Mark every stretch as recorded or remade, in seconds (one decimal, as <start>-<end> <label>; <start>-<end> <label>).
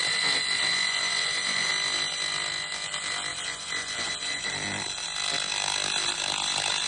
0.0-1.7 remade; 1.7-3.3 recorded; 3.3-4.5 remade; 4.5-6.9 recorded